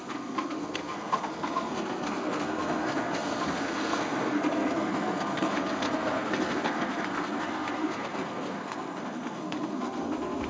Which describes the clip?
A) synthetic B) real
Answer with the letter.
A